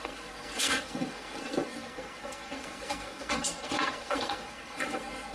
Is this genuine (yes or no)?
no